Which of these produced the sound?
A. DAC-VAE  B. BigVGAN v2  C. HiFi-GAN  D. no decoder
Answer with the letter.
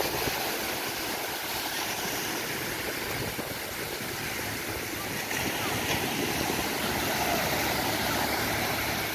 D